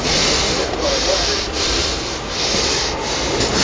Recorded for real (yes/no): yes